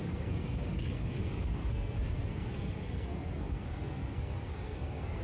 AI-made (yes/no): yes